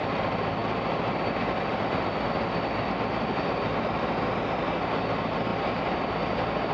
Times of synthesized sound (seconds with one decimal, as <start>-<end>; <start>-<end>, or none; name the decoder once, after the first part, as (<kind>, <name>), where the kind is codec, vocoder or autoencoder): none